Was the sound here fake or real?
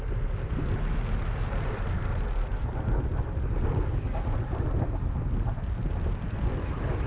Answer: fake